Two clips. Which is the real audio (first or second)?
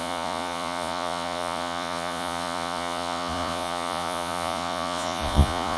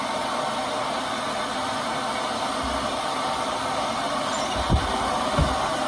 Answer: second